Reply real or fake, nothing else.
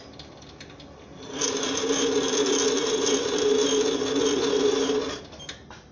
real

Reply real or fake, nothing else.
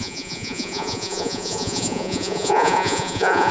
fake